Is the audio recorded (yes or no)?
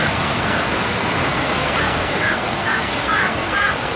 no